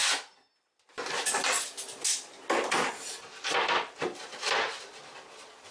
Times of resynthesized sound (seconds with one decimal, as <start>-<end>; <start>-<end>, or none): none